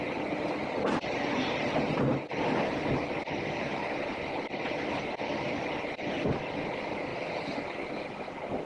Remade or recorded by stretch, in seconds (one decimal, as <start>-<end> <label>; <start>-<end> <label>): 0.0-8.7 recorded